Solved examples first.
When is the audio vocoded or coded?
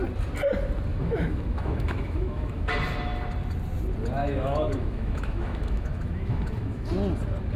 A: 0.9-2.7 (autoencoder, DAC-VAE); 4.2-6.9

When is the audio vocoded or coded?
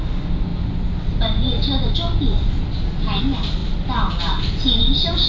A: none